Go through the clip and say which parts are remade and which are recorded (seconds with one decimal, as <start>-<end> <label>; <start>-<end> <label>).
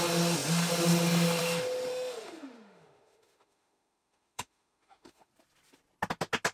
0.0-1.9 recorded; 1.9-5.3 remade; 5.3-6.5 recorded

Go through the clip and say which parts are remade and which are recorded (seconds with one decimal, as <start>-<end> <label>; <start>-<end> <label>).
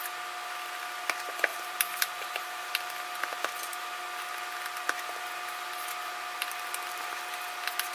0.0-1.5 recorded; 1.5-2.7 remade; 2.7-7.9 recorded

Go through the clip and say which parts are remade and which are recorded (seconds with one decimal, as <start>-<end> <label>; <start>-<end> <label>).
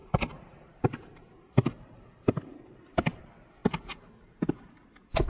0.0-3.2 remade; 3.2-5.3 recorded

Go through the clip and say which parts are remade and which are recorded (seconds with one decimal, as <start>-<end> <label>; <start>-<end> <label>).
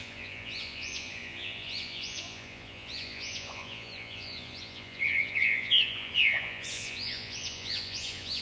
0.0-8.4 remade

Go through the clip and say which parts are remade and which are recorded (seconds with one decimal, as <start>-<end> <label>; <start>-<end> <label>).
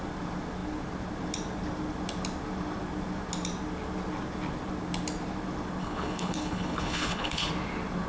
0.0-5.8 recorded; 5.8-7.5 remade; 7.5-8.1 recorded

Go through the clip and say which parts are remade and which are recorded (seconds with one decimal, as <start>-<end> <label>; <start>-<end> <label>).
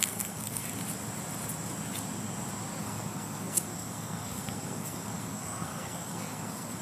0.0-0.7 remade; 0.7-2.8 recorded; 2.8-6.8 remade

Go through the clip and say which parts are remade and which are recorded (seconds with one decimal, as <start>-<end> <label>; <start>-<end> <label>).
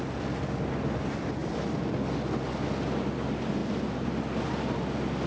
0.0-5.3 recorded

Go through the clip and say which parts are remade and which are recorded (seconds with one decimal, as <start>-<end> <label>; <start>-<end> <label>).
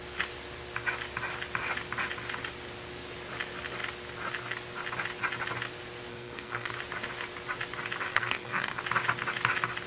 0.0-6.1 recorded; 6.1-6.7 remade; 6.7-8.1 recorded; 8.1-8.8 remade; 8.8-9.9 recorded